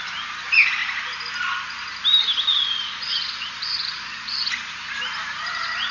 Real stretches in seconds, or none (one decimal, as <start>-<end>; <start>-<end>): 0.0-2.5; 4.6-5.9